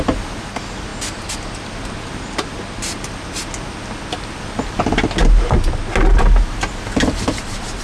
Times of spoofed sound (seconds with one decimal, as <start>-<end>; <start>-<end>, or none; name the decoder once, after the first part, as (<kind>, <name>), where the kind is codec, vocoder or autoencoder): none